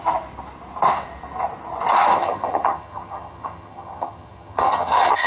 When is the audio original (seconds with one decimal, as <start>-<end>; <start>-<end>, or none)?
0.0-2.1